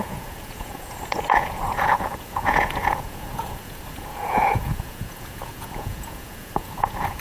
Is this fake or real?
fake